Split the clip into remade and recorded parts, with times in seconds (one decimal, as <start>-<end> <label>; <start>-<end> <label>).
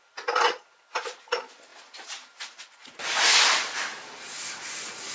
0.0-5.1 recorded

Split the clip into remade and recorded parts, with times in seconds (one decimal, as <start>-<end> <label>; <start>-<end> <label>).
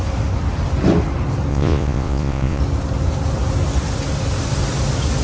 0.0-1.5 recorded; 1.5-2.6 remade; 2.6-5.2 recorded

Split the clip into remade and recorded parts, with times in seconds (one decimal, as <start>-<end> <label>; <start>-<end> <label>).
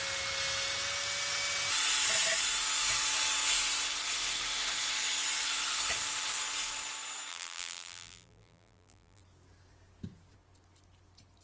0.0-7.3 recorded; 7.3-9.2 remade; 9.2-11.4 recorded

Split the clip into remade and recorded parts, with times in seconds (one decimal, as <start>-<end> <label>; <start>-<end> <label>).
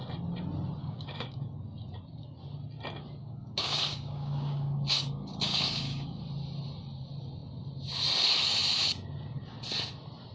0.0-0.8 recorded; 0.8-1.5 remade; 1.5-3.2 recorded; 3.2-6.2 remade; 6.2-10.3 recorded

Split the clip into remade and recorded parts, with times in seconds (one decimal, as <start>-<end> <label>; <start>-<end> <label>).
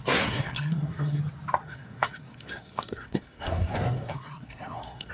0.0-1.2 remade; 1.2-1.6 recorded; 1.6-5.1 remade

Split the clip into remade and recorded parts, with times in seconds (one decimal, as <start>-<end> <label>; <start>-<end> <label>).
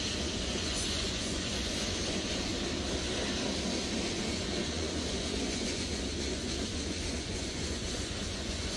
0.0-2.5 remade; 2.5-4.1 recorded; 4.1-8.8 remade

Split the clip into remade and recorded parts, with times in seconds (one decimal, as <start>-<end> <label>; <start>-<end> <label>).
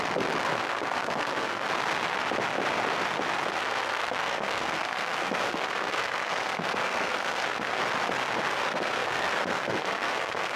0.0-0.5 recorded; 0.5-1.7 remade; 1.7-3.5 recorded; 3.5-7.8 remade; 7.8-8.5 recorded; 8.5-10.6 remade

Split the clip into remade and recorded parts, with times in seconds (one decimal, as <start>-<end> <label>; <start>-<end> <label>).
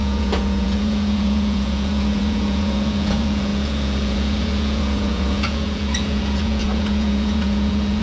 0.0-8.0 remade